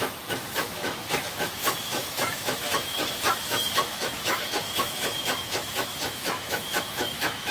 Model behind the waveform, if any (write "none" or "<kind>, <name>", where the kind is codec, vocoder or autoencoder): autoencoder, DAC-VAE